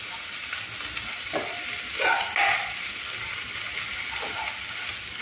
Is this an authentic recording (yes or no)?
yes